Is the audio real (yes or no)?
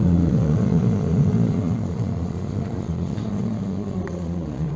no